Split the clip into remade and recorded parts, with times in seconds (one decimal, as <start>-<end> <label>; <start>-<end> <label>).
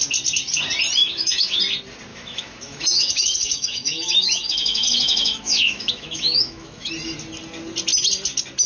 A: 0.0-1.0 recorded; 1.0-1.6 remade; 1.6-2.1 recorded; 2.1-6.9 remade; 6.9-8.7 recorded